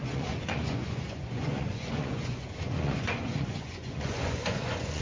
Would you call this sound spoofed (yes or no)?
yes